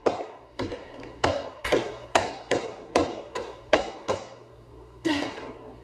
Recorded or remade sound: remade